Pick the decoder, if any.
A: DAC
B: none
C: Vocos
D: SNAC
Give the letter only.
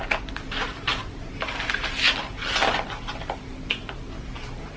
B